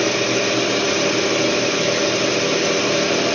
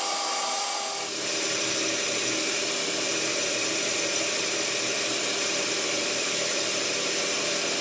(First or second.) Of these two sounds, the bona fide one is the first